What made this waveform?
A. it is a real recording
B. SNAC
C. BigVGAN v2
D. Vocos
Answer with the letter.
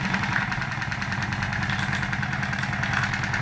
A